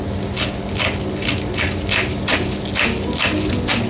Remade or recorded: recorded